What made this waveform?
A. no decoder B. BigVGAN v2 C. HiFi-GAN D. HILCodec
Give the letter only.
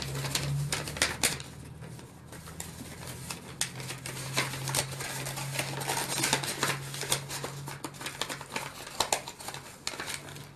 A